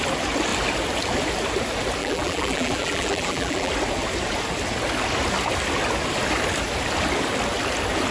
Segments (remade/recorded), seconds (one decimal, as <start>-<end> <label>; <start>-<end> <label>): 0.0-2.0 recorded; 2.0-3.7 remade; 3.7-8.1 recorded

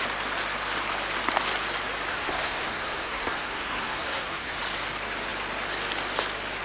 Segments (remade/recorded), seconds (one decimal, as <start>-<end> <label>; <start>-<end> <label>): 0.0-2.1 recorded; 2.1-4.6 remade; 4.6-6.6 recorded

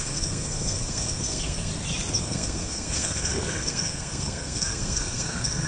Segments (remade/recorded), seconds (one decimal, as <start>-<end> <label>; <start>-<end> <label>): 0.0-1.7 remade; 1.7-2.2 recorded; 2.2-5.7 remade

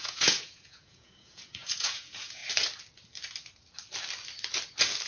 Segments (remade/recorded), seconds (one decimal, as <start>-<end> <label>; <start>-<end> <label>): 0.0-2.4 remade; 2.4-5.1 recorded

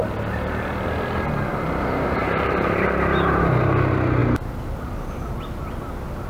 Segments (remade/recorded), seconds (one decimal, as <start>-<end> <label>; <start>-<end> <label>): 0.0-2.2 recorded; 2.2-3.4 remade; 3.4-6.3 recorded

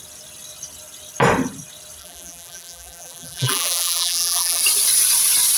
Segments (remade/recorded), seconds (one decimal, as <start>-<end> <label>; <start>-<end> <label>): 0.0-2.0 recorded; 2.0-4.6 remade; 4.6-5.6 recorded

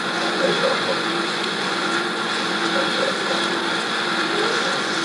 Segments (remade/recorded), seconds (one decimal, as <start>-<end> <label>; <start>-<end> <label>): 0.0-2.9 remade; 2.9-3.7 recorded; 3.7-5.0 remade